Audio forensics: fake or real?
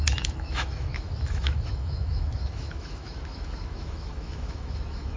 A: fake